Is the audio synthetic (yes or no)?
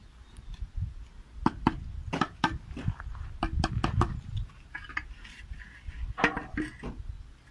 no